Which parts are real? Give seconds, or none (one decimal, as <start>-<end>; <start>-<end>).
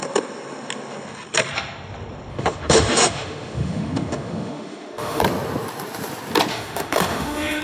0.0-2.3; 5.2-6.5